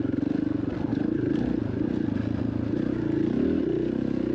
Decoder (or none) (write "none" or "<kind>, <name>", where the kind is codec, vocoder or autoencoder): none